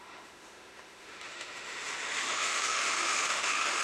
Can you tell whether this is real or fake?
fake